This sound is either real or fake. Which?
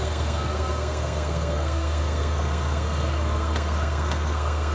fake